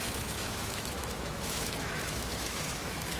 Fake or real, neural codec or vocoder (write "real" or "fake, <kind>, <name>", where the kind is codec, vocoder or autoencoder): fake, autoencoder, DAC-VAE